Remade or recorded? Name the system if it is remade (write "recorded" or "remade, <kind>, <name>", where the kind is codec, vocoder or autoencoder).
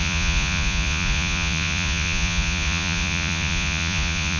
remade, vocoder, Vocos